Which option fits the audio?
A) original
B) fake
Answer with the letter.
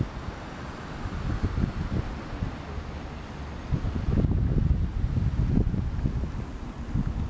A